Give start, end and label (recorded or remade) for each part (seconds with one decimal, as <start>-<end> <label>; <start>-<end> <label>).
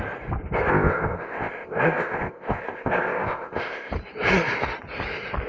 0.0-0.7 recorded; 0.7-3.9 remade; 3.9-5.5 recorded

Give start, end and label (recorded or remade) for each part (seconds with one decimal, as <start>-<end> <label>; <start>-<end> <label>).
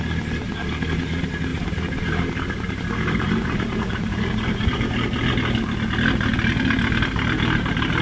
0.0-1.5 recorded; 1.5-5.3 remade; 5.3-8.0 recorded